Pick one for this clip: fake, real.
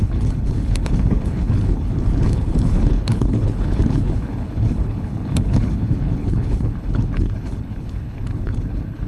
fake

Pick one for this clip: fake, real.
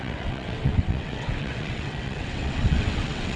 fake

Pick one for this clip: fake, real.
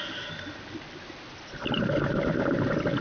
real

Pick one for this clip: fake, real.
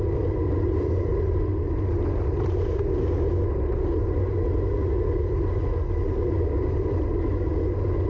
real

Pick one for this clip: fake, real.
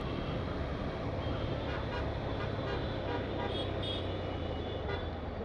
real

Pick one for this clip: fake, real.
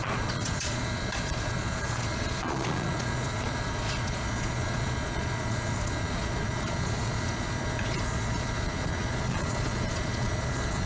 fake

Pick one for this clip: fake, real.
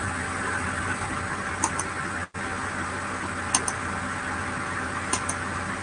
real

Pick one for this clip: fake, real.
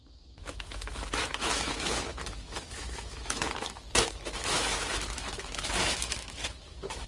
fake